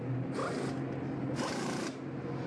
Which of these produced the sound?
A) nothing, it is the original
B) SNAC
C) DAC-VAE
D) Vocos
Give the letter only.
A